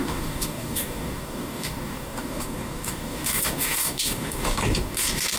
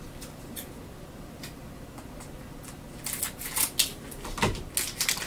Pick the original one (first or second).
second